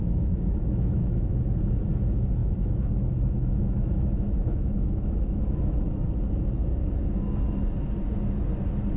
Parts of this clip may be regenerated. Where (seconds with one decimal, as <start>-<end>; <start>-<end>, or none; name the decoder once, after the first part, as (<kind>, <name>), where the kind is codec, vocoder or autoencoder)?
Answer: 0.0-1.4 (autoencoder, DAC-VAE); 2.4-5.8